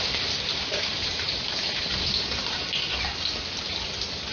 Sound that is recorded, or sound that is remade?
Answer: recorded